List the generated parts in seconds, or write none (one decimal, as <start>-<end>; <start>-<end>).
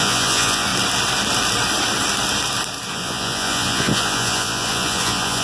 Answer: 0.0-0.7; 2.9-5.4